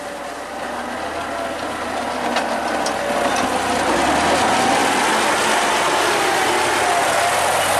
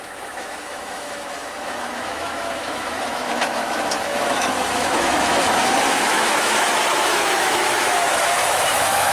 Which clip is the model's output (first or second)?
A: second